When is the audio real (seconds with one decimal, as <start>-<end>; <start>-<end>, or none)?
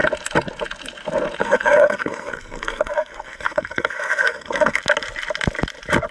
0.0-1.4; 4.8-6.1